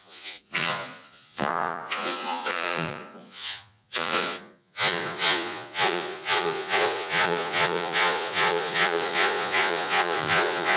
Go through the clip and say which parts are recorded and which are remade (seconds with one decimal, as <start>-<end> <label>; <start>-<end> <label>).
0.0-10.8 remade